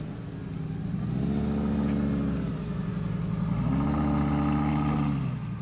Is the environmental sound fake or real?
real